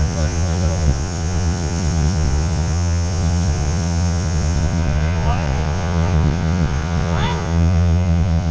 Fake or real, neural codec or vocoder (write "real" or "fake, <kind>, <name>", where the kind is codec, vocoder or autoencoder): fake, vocoder, Vocos